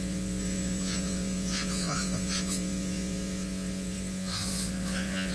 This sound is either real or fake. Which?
fake